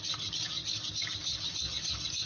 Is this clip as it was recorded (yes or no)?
yes